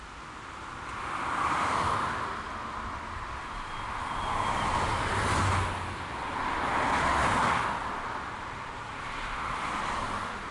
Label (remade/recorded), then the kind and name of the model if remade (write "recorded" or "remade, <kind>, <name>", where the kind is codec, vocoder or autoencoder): recorded